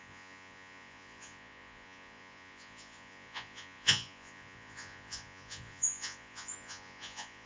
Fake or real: fake